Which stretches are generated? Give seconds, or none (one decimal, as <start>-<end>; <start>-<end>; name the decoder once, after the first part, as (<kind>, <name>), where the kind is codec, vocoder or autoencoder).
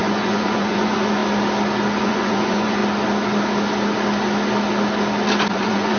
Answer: 0.0-1.2 (vocoder, Vocos); 2.0-2.8; 5.5-6.0